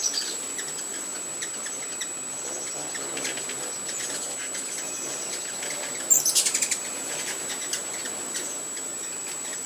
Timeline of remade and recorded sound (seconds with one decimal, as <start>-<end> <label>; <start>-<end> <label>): 0.0-1.1 remade; 1.1-4.7 recorded; 4.7-9.7 remade